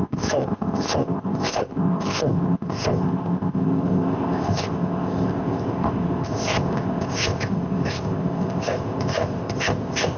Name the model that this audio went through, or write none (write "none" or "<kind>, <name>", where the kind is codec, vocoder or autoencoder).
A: codec, ZipCodec